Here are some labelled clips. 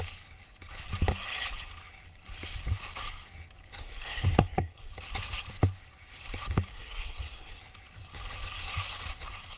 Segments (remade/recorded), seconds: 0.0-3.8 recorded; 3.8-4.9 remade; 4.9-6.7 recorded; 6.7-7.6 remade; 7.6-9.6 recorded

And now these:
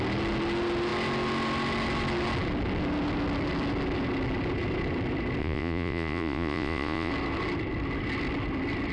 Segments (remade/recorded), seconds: 0.0-5.4 recorded; 5.4-7.1 remade; 7.1-8.9 recorded

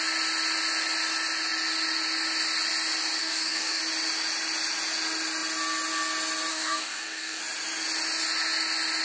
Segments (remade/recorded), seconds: 0.0-3.2 recorded; 3.2-3.8 remade; 3.8-6.5 recorded; 6.5-7.4 remade; 7.4-9.0 recorded

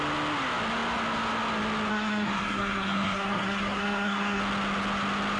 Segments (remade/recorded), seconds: 0.0-1.9 recorded; 1.9-4.4 remade; 4.4-5.4 recorded

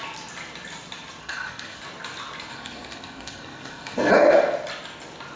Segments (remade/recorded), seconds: 0.0-1.2 recorded; 1.2-1.8 remade; 1.8-2.5 recorded; 2.5-4.1 remade; 4.1-5.4 recorded

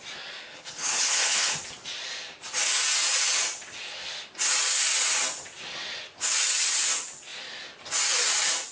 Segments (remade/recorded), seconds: 0.0-0.4 recorded; 0.4-1.5 remade; 1.5-8.7 recorded